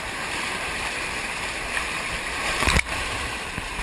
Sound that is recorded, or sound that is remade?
remade